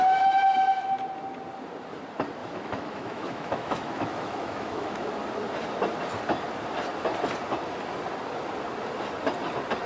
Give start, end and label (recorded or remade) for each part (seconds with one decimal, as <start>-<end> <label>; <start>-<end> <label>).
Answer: 0.0-2.4 recorded; 2.4-5.1 remade; 5.1-9.9 recorded

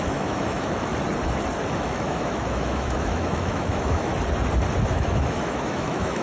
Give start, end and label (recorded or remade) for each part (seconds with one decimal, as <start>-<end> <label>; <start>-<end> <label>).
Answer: 0.0-0.9 remade; 0.9-1.7 recorded; 1.7-4.1 remade; 4.1-4.9 recorded; 4.9-6.2 remade

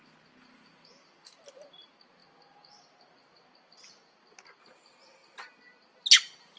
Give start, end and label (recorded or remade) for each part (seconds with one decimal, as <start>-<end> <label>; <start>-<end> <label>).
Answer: 0.0-6.6 recorded

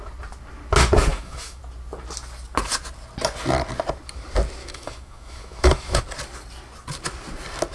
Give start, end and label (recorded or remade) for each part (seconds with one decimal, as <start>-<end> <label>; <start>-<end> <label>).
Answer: 0.0-1.1 recorded; 1.1-1.6 remade; 1.6-4.6 recorded; 4.6-6.0 remade; 6.0-7.7 recorded

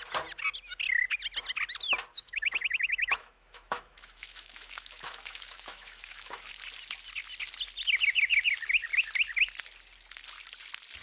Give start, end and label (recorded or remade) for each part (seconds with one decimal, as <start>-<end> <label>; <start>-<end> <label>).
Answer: 0.0-2.1 recorded; 2.1-6.5 remade; 6.5-11.0 recorded

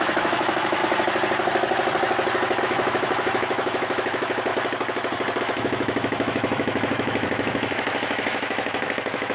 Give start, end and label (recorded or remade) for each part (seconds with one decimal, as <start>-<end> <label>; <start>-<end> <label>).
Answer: 0.0-0.8 remade; 0.8-2.6 recorded; 2.6-4.5 remade; 4.5-5.4 recorded; 5.4-9.3 remade

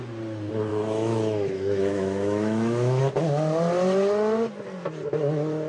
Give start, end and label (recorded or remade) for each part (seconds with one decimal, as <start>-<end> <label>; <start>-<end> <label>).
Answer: 0.0-0.7 recorded; 0.7-3.0 remade; 3.0-5.7 recorded

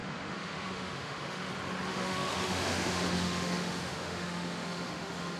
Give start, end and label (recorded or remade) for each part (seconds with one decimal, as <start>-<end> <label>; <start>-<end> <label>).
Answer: 0.0-1.5 remade; 1.5-1.9 recorded; 1.9-5.4 remade